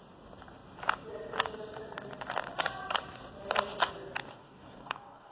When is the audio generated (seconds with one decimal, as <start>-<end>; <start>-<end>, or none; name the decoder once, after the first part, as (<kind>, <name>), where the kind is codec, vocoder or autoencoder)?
4.3-5.3 (codec, DAC)